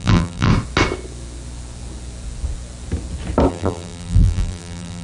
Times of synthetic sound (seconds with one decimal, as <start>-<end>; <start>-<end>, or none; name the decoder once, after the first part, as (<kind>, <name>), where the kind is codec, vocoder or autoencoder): 0.0-0.5 (vocoder, BigVGAN v2); 3.5-5.0